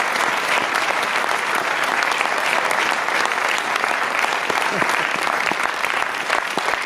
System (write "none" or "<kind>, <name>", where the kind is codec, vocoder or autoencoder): none